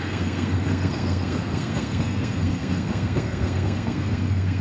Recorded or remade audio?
remade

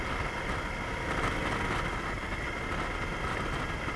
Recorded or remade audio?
recorded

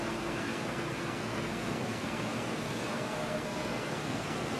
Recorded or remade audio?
remade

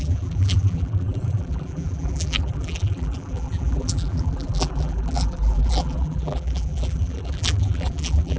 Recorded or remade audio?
remade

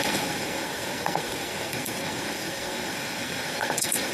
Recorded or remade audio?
remade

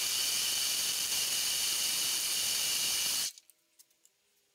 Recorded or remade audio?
recorded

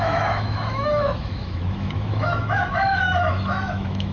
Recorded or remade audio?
remade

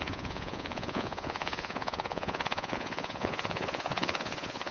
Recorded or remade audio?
remade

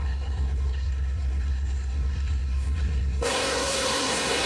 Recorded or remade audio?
remade